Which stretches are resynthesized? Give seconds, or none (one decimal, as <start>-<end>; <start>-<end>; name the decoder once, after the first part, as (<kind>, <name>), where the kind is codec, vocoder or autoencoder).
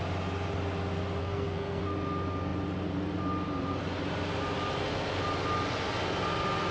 1.2-1.8 (codec, SNAC)